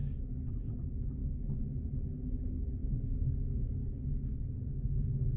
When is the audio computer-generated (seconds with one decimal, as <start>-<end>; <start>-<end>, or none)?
0.0-0.7; 1.2-1.8; 2.8-4.4